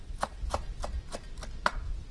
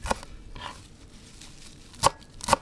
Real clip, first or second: second